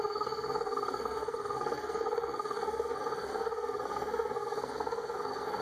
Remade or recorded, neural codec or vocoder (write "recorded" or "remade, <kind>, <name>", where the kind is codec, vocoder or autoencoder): remade, codec, SNAC